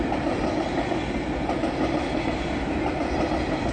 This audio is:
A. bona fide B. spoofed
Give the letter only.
A